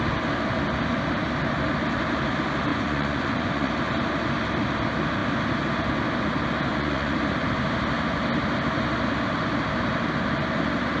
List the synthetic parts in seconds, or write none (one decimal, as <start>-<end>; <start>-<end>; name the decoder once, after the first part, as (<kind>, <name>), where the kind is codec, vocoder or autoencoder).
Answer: 2.7-3.7 (vocoder, Vocos); 6.7-7.2